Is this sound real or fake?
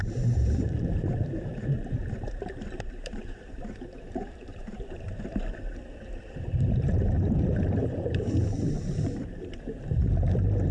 fake